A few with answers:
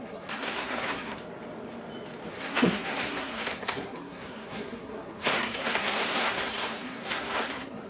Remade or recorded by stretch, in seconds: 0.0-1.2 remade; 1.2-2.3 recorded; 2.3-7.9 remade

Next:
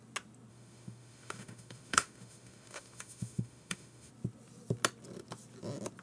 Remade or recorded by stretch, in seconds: 0.0-0.5 recorded; 0.5-4.1 remade; 4.1-6.0 recorded

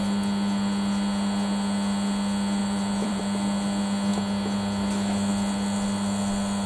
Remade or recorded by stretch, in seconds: 0.0-2.6 recorded; 2.6-3.2 remade; 3.2-6.7 recorded

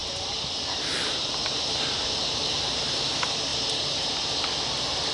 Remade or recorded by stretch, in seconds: 0.0-5.1 recorded

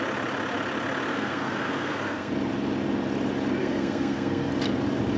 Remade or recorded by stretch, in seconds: 0.0-1.1 recorded; 1.1-2.3 remade; 2.3-3.6 recorded; 3.6-4.5 remade; 4.5-5.2 recorded

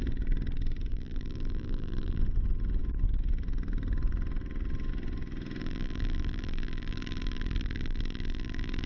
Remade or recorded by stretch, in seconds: 0.0-0.9 recorded; 0.9-2.2 remade; 2.2-5.6 recorded; 5.6-8.9 remade

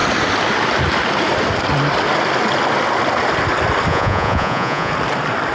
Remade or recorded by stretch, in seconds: 0.0-3.9 recorded; 3.9-4.9 remade; 4.9-5.5 recorded